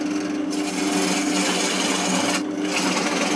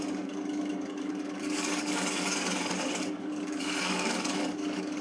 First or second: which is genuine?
first